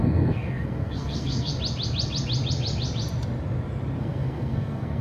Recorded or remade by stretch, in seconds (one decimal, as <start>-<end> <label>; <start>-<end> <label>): 0.0-1.5 remade; 1.5-4.0 recorded; 4.0-5.0 remade